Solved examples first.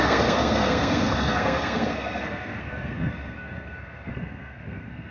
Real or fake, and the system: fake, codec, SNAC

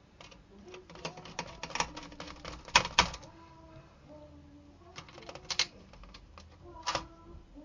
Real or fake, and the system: real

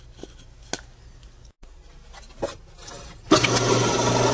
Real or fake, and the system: real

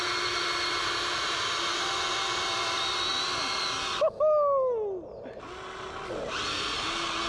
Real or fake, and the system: real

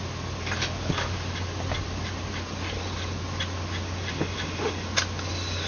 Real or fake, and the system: real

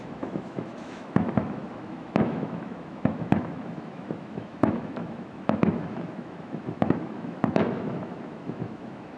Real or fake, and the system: fake, autoencoder, DAC-VAE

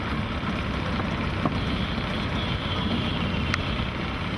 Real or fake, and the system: real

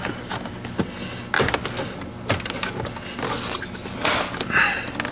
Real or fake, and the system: real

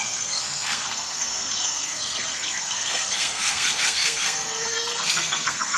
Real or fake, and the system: fake, codec, SNAC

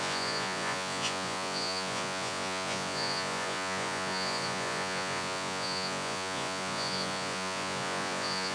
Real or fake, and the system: fake, vocoder, Vocos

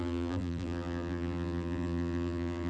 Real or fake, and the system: fake, vocoder, BigVGAN v2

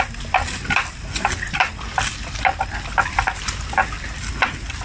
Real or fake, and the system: real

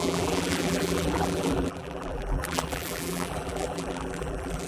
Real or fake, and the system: fake, vocoder, BigVGAN v2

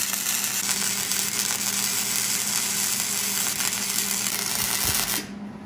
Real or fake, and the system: real